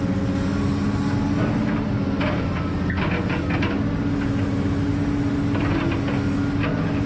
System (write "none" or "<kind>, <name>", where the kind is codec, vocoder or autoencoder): none